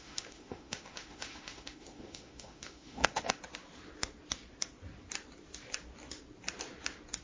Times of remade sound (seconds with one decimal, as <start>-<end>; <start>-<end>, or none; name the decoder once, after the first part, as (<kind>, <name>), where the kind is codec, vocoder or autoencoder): 0.0-3.4 (autoencoder, DAC-VAE)